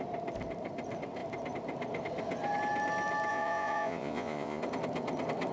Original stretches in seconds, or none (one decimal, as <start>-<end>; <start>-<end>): 0.0-3.3; 4.6-5.5